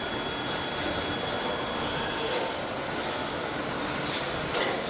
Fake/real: real